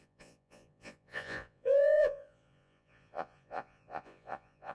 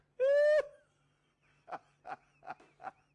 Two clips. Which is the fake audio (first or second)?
first